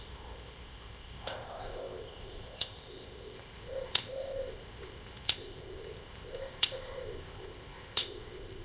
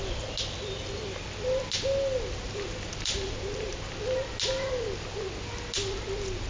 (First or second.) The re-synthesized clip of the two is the first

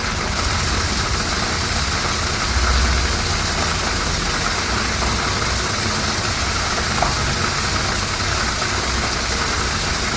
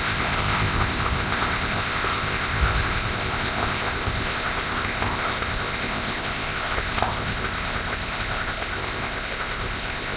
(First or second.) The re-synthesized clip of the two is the second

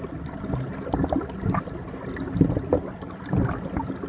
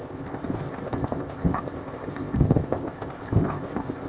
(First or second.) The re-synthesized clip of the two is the second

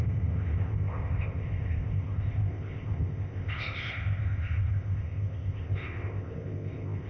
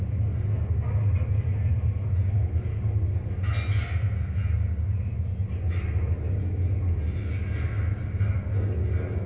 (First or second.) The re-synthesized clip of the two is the first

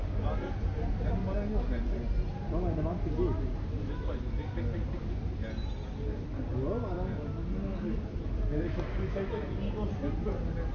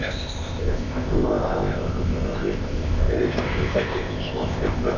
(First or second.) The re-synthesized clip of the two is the second